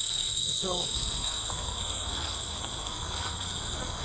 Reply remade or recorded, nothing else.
remade